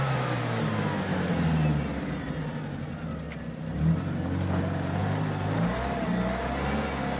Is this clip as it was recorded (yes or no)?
yes